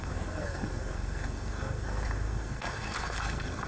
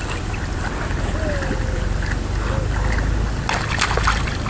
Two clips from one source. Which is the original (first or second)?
second